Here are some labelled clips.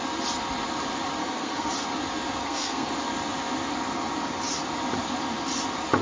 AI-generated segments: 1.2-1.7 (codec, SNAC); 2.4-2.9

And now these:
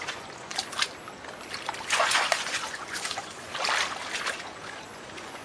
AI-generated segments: 0.0-0.5 (vocoder, Vocos); 1.9-3.5; 4.4-5.4

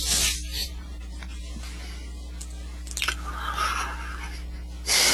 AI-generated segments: 0.6-1.4 (vocoder, BigVGAN v2)

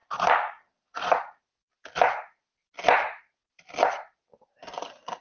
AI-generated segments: 0.0-1.4 (vocoder, Vocos)

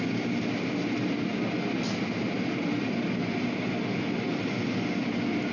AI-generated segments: none

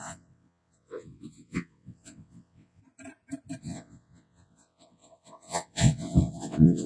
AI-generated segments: 0.0-2.8 (vocoder, WaveNeXt); 3.6-6.9

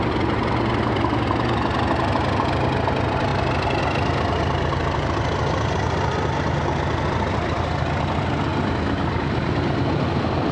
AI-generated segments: none